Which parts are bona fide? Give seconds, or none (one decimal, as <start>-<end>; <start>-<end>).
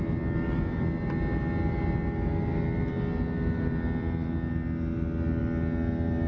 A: 0.0-6.3